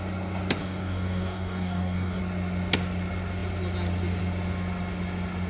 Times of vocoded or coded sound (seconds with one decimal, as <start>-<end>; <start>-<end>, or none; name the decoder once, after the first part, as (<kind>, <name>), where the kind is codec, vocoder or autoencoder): 0.6-2.2 (codec, DAC)